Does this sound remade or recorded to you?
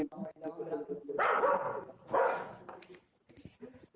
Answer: recorded